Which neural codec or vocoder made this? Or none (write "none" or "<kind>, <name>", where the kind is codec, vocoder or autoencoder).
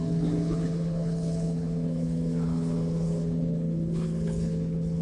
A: codec, HILCodec